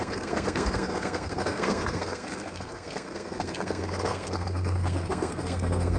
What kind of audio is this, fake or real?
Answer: fake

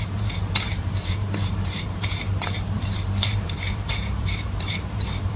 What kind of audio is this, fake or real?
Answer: fake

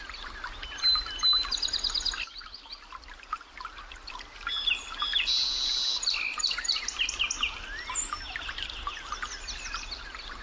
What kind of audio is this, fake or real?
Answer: real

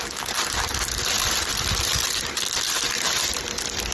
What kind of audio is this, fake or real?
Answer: real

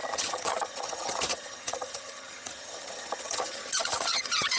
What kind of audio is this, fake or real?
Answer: fake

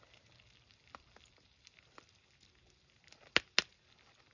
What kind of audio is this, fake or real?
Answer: real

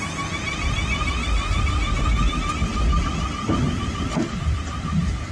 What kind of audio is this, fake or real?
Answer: real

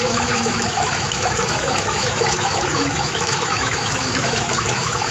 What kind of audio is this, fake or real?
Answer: fake